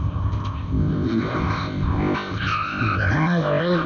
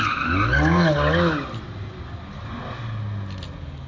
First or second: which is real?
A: second